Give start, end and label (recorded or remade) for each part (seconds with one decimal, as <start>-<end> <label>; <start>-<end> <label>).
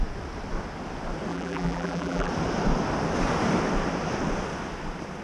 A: 0.0-1.3 recorded; 1.3-2.3 remade; 2.3-5.2 recorded